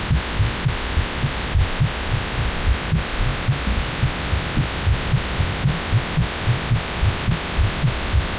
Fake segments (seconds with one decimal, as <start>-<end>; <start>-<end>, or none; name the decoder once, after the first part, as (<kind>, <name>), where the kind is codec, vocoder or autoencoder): none

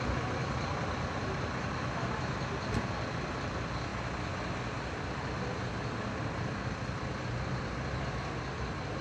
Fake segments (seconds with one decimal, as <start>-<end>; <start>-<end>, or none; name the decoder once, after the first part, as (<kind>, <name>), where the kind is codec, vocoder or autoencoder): none

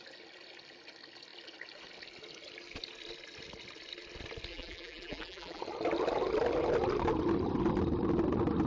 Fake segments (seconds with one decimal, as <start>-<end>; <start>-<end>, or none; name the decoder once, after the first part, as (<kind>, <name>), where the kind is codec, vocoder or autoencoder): 4.5-5.6 (vocoder, BigVGAN v2)